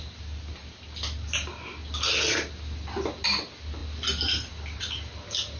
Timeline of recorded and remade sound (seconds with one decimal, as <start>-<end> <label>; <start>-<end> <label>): 0.0-5.6 recorded